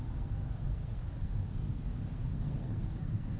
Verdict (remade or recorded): remade